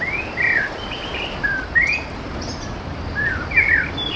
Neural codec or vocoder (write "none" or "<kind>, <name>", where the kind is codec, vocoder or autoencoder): vocoder, BigVGAN v2